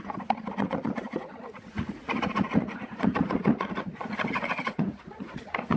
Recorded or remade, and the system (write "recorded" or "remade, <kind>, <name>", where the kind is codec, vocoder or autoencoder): remade, vocoder, Vocos